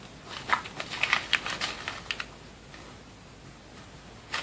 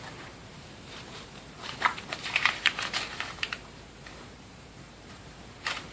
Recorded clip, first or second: first